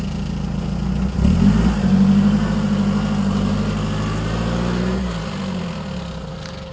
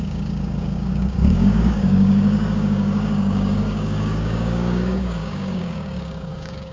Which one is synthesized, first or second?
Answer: second